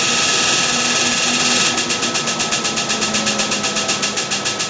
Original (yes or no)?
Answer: yes